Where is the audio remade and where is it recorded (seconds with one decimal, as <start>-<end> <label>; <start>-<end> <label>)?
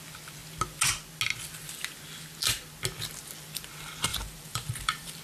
0.0-4.1 recorded; 4.1-5.2 remade